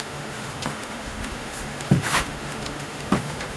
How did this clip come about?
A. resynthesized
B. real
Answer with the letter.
A